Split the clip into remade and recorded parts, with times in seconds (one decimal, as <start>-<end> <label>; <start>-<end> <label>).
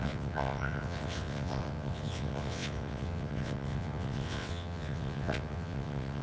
0.0-6.2 remade